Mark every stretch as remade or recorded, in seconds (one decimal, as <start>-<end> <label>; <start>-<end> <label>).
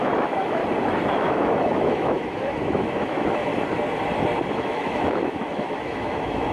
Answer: 0.0-0.6 remade; 0.6-1.2 recorded; 1.2-3.5 remade; 3.5-4.5 recorded; 4.5-6.5 remade